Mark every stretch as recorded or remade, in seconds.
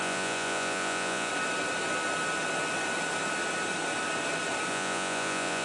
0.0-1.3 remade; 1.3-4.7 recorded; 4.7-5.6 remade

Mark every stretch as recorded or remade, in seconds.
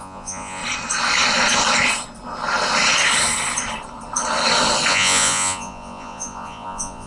0.0-0.6 remade; 0.6-4.9 recorded; 4.9-7.1 remade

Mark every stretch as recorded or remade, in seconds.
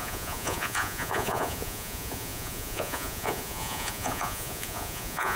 0.0-5.4 remade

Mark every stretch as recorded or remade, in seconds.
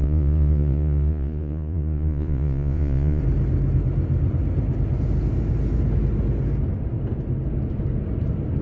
0.0-3.2 remade; 3.2-8.6 recorded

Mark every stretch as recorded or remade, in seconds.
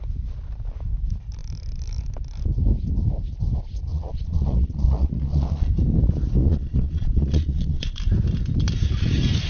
0.0-3.9 recorded; 3.9-5.7 remade; 5.7-6.4 recorded; 6.4-8.0 remade; 8.0-9.5 recorded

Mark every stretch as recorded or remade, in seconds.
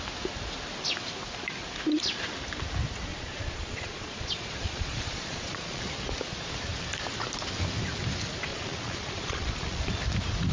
0.0-3.1 recorded; 3.1-5.8 remade; 5.8-8.5 recorded; 8.5-9.8 remade; 9.8-10.5 recorded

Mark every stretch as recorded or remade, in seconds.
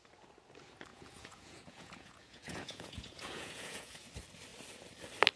0.0-0.9 recorded; 0.9-4.1 remade; 4.1-5.4 recorded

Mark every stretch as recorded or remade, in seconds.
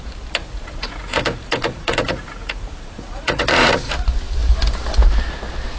0.0-0.4 recorded; 0.4-3.9 remade; 3.9-5.8 recorded